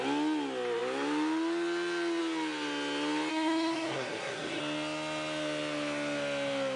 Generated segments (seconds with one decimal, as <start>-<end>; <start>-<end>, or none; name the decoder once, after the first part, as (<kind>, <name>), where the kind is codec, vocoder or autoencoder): 3.3-4.6 (codec, SNAC)